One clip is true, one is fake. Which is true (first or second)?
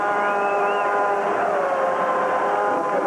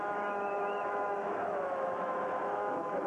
first